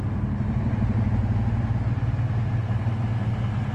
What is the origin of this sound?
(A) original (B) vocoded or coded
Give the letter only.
A